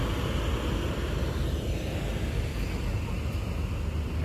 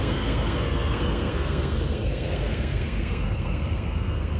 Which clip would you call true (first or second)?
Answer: first